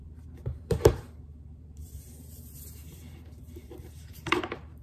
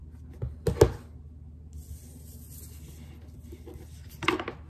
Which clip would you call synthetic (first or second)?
first